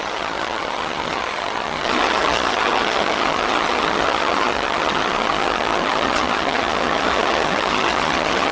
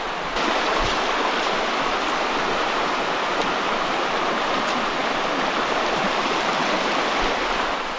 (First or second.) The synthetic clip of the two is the first